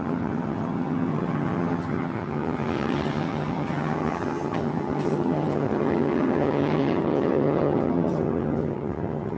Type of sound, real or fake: fake